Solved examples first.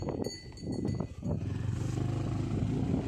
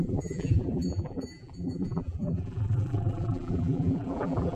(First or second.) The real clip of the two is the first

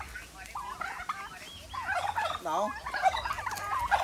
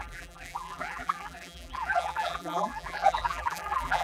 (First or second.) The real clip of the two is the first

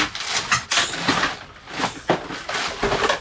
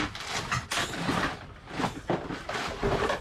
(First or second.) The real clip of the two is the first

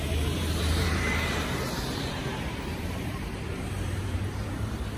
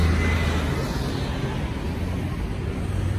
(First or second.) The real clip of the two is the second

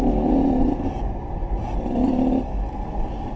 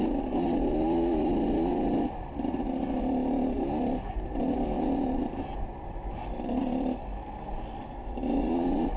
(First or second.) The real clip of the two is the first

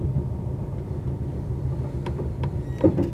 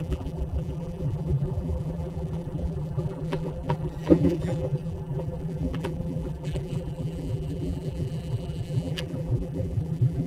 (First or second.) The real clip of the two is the first